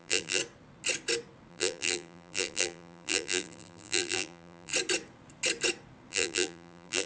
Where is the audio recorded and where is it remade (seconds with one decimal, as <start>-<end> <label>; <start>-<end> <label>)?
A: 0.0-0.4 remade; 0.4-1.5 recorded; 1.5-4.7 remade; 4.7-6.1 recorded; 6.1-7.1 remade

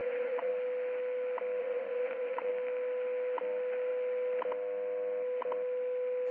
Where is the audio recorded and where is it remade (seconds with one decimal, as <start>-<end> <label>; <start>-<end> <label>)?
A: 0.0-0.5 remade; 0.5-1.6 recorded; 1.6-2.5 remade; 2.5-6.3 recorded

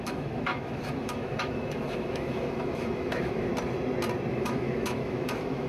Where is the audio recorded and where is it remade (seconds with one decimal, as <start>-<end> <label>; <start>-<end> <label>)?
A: 0.0-3.5 remade; 3.5-4.3 recorded; 4.3-5.7 remade

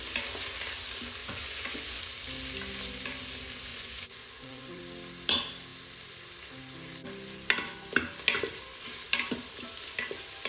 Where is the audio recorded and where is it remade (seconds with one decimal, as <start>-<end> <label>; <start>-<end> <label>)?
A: 0.0-1.2 recorded; 1.2-2.0 remade; 2.0-3.7 recorded; 3.7-4.8 remade; 4.8-10.5 recorded

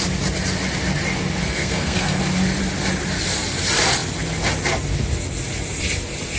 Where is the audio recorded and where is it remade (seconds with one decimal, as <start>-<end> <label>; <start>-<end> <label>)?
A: 0.0-1.4 recorded; 1.4-2.2 remade; 2.2-6.4 recorded